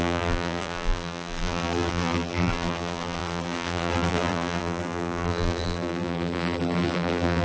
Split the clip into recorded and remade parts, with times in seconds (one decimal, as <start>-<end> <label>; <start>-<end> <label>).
0.0-7.4 remade